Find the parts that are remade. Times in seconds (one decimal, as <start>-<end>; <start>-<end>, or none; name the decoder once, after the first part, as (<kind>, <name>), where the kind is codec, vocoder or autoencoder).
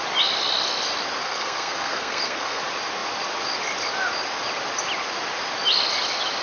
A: 1.2-2.6 (codec, SNAC)